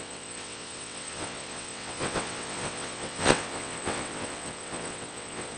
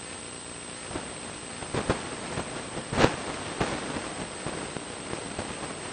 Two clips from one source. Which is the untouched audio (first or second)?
second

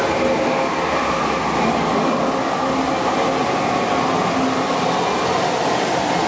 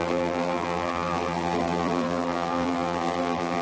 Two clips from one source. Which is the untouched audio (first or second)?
first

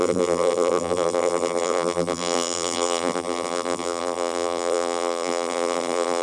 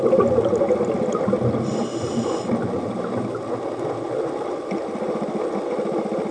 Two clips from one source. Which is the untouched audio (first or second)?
second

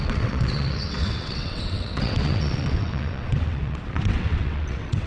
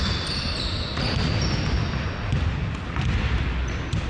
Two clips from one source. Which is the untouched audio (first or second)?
second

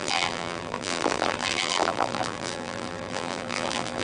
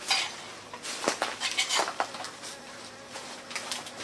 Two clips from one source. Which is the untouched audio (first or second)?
second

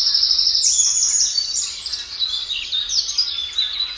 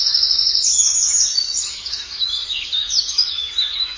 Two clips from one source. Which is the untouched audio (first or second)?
first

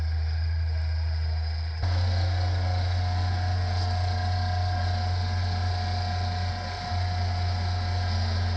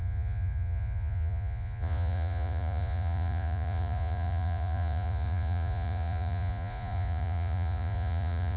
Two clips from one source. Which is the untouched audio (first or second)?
first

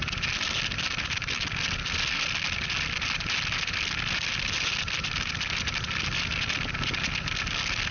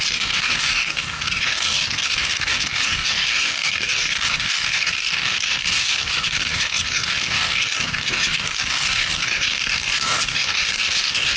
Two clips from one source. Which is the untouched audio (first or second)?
first